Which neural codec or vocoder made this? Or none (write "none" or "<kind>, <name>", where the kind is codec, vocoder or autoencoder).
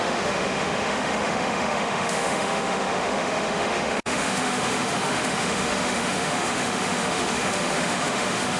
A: autoencoder, DAC-VAE